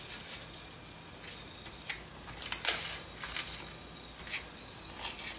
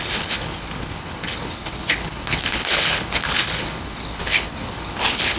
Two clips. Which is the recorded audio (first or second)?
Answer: first